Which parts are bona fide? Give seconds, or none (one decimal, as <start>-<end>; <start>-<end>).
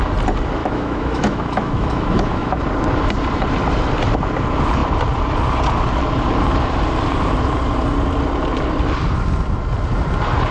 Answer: 0.0-0.6; 2.6-10.5